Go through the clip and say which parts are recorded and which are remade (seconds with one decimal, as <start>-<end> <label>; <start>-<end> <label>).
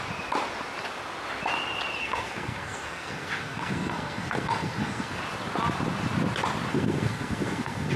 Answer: 0.0-2.0 recorded; 2.0-5.2 remade; 5.2-6.7 recorded; 6.7-8.0 remade